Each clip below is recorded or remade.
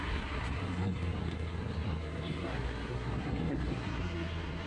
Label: remade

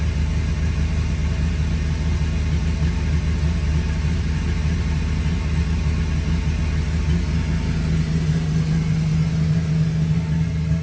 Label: recorded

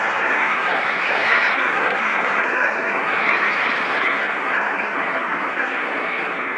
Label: remade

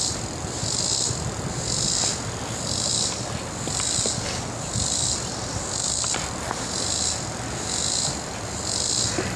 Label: recorded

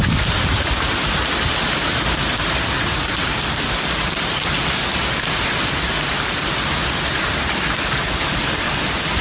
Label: recorded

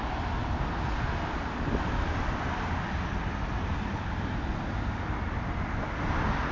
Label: recorded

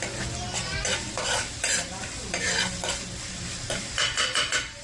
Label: recorded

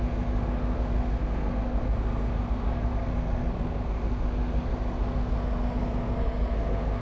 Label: remade